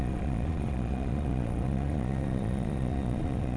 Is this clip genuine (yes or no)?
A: no